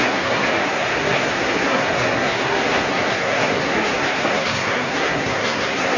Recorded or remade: remade